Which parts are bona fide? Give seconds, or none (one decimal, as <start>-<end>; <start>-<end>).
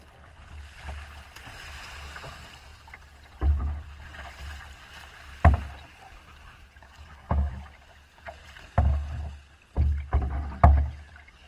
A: 0.0-6.8; 7.5-11.5